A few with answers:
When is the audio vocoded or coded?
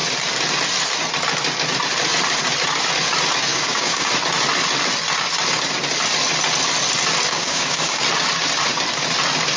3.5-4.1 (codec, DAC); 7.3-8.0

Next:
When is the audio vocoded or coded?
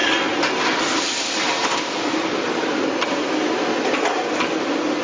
none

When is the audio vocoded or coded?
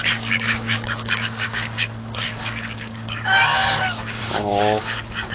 0.0-5.3 (codec, DAC)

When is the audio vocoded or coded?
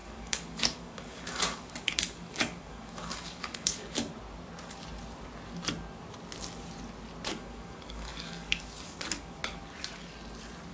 0.0-4.1 (codec, DAC); 7.3-9.4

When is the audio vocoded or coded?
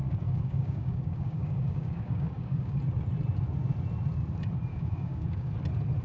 0.0-2.8 (codec, DAC); 4.7-5.5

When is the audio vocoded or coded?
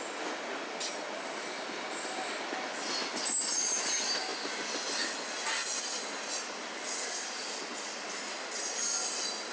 none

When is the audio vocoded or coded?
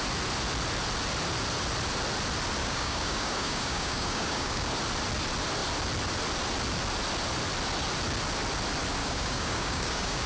2.6-4.7 (codec, DAC); 9.0-10.3